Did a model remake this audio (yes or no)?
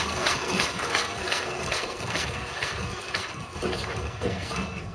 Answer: yes